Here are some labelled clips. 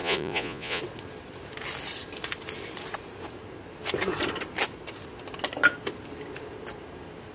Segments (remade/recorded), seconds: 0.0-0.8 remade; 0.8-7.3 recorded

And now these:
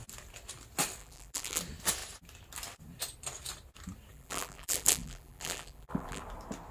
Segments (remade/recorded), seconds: 0.0-1.0 recorded; 1.0-1.6 remade; 1.6-4.1 recorded; 4.1-6.2 remade; 6.2-6.7 recorded

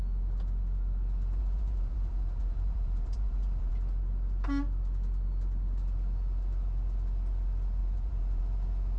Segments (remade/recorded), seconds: 0.0-1.4 recorded; 1.4-3.7 remade; 3.7-7.8 recorded; 7.8-8.4 remade; 8.4-9.0 recorded

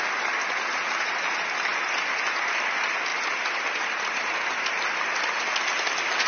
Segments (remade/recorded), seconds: 0.0-6.3 recorded

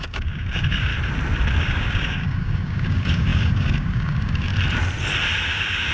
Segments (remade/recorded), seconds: 0.0-0.9 remade; 0.9-1.6 recorded; 1.6-4.5 remade; 4.5-5.4 recorded; 5.4-5.9 remade

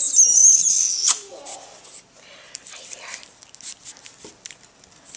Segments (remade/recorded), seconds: 0.0-5.2 recorded

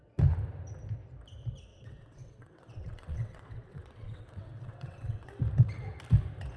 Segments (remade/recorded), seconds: 0.0-1.7 recorded; 1.7-5.4 remade; 5.4-6.6 recorded

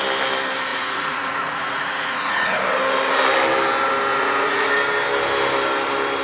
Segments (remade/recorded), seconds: 0.0-0.7 recorded; 0.7-2.6 remade; 2.6-4.1 recorded; 4.1-4.7 remade; 4.7-6.2 recorded